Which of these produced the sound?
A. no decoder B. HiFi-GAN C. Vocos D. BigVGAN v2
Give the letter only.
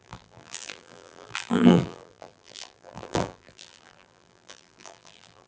D